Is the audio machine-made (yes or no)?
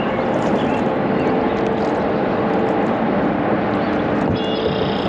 no